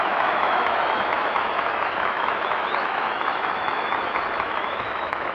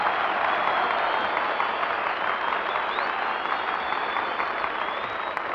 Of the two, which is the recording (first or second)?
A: second